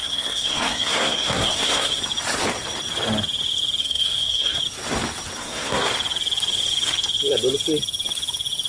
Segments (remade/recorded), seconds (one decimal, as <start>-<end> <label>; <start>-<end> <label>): 0.0-2.0 remade; 2.0-3.8 recorded; 3.8-4.6 remade; 4.6-5.4 recorded; 5.4-5.9 remade; 5.9-8.7 recorded